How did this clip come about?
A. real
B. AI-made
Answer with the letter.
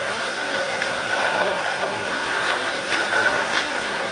B